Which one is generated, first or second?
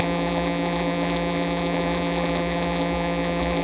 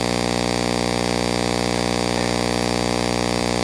first